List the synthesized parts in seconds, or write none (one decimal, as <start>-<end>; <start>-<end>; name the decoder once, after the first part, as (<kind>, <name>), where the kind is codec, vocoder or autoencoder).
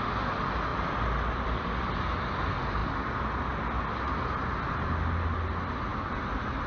0.7-1.9 (vocoder, BigVGAN v2)